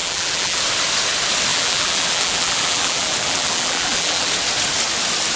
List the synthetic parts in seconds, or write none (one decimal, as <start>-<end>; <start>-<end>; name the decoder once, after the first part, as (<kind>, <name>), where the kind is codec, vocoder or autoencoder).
0.0-0.6 (vocoder, BigVGAN v2); 1.5-4.3